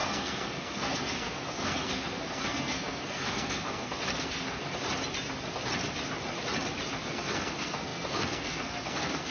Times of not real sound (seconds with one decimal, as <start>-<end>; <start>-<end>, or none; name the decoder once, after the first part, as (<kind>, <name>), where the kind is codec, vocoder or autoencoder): 0.0-4.6 (codec, SNAC); 7.0-9.3